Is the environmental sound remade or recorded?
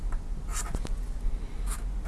recorded